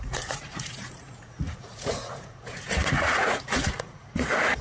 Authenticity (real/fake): fake